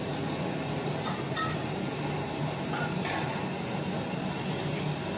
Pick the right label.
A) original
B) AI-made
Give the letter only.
A